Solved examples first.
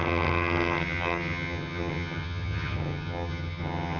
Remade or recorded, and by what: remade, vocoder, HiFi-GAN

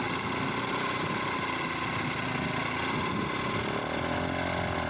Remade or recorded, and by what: recorded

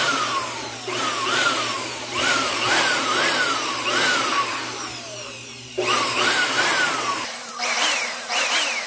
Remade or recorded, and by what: remade, vocoder, BigVGAN v2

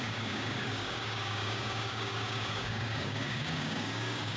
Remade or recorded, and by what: remade, codec, DAC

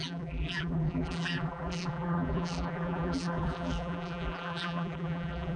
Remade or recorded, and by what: remade, vocoder, BigVGAN v2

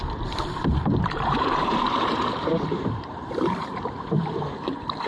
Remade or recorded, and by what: remade, vocoder, BigVGAN v2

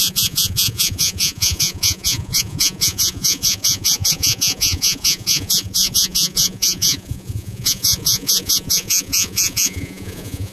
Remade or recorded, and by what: remade, vocoder, Vocos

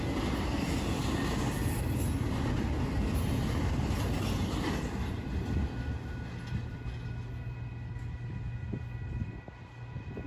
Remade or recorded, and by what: recorded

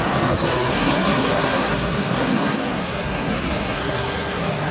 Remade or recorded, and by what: remade, codec, SNAC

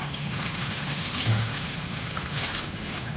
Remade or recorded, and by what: remade, autoencoder, DAC-VAE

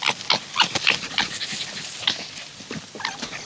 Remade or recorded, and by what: recorded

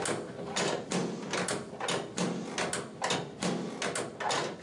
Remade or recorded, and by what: recorded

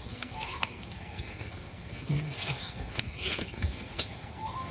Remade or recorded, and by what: remade, codec, SNAC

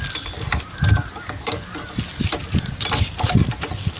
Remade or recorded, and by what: recorded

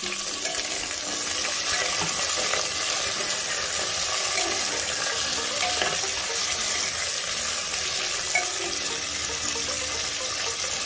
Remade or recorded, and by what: recorded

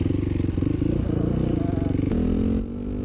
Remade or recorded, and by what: recorded